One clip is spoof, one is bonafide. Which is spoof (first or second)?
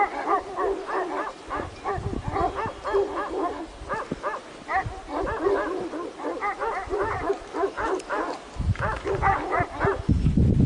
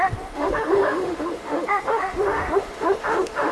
second